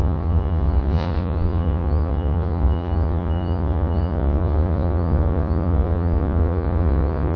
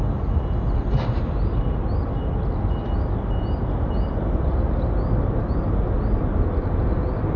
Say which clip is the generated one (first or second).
first